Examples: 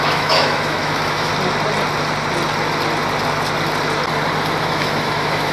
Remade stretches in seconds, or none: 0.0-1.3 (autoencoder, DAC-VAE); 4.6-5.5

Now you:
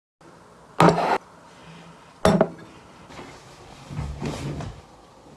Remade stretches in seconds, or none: none

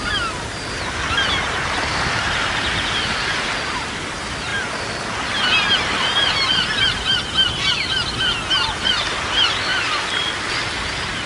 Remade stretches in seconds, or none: none

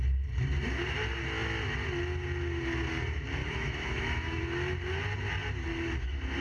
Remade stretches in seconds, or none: 3.4-4.4 (autoencoder, DAC-VAE)